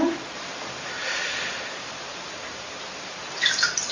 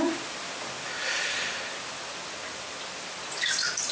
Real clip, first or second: second